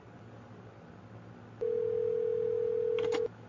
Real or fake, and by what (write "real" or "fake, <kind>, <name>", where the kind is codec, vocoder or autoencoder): real